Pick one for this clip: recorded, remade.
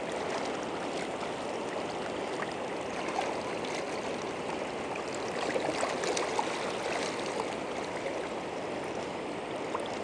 recorded